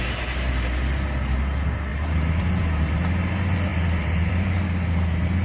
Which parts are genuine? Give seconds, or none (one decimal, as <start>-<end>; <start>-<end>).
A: 0.0-1.9; 3.1-3.7; 4.3-5.4

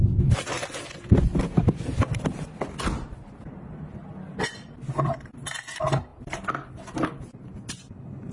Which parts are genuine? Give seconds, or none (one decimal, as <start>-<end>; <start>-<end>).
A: 0.0-8.3

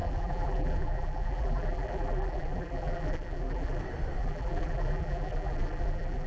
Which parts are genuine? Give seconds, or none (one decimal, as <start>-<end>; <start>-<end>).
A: 3.8-4.2

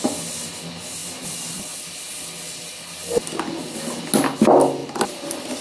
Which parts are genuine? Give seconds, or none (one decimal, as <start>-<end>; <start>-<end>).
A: 0.0-1.0; 3.2-4.8

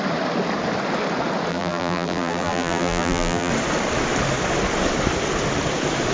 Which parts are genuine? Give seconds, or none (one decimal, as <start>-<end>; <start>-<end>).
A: 0.0-1.5; 3.5-6.1

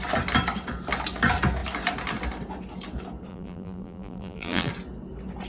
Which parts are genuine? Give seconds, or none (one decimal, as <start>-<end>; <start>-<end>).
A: 0.0-3.3; 4.7-5.5

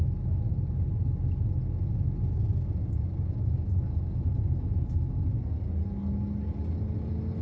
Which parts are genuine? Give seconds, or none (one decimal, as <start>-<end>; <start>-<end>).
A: 0.0-0.5; 1.2-4.7; 5.5-7.4